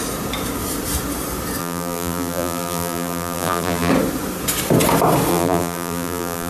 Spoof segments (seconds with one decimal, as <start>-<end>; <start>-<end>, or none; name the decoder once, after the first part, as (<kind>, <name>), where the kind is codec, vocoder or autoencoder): 1.6-3.9 (vocoder, BigVGAN v2); 5.3-6.5